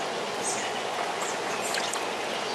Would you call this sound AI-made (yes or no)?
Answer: yes